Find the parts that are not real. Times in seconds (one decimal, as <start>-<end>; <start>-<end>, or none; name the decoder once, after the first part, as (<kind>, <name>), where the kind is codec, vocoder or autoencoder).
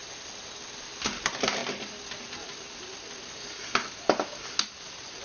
0.0-0.5 (vocoder, BigVGAN v2)